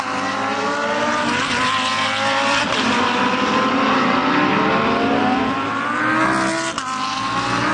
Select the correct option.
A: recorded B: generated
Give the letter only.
A